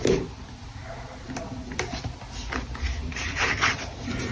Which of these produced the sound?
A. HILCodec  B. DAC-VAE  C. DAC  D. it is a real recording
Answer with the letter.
D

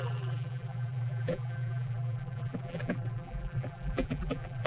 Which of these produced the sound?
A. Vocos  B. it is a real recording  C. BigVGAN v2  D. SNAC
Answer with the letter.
C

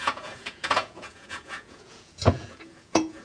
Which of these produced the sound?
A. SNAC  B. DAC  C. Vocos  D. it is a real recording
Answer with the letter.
C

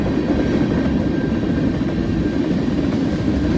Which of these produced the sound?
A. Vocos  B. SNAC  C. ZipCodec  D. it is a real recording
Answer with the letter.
D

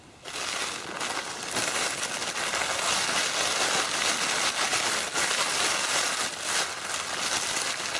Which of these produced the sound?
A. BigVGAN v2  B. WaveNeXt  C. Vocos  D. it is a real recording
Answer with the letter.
D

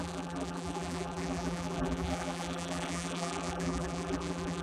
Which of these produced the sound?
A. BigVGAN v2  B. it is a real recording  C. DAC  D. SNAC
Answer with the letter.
A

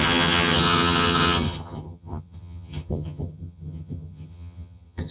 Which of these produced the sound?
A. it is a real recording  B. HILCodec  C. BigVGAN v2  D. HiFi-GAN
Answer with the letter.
D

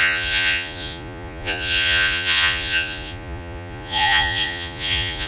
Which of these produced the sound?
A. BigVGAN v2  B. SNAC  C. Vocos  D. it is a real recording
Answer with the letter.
C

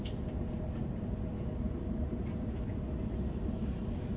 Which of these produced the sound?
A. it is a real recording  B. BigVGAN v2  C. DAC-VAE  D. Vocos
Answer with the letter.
B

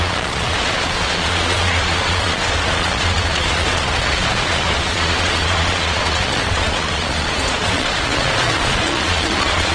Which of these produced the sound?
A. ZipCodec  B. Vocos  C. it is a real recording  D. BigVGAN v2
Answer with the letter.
B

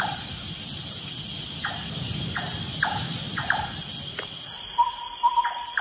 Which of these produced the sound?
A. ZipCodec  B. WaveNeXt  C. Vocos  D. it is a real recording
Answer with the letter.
D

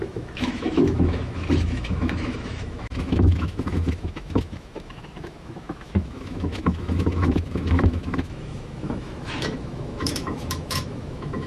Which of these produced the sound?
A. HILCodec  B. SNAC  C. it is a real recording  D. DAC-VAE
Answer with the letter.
D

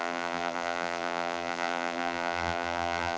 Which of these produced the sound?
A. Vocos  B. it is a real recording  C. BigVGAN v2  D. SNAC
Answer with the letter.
C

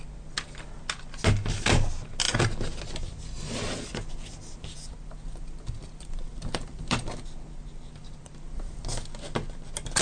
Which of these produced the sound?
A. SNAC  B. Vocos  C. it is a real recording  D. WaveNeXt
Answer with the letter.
C